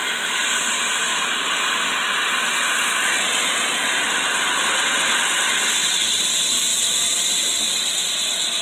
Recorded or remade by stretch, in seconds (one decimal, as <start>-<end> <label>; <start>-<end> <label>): 0.0-1.1 remade; 1.1-5.7 recorded; 5.7-8.6 remade